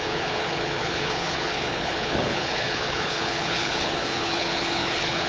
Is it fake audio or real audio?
fake